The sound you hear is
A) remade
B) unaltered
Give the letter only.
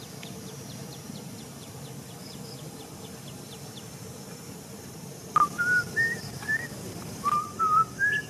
A